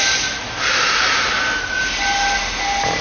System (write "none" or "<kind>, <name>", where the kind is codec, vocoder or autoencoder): none